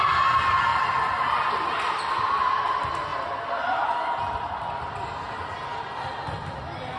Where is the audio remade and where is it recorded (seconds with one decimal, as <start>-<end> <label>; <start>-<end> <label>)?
0.0-7.0 recorded